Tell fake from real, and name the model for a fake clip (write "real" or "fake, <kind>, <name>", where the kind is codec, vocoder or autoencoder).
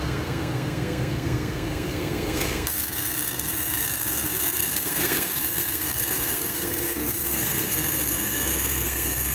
fake, codec, SNAC